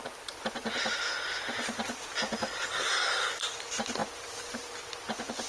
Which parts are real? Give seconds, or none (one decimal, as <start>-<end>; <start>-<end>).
0.0-2.7; 3.3-5.5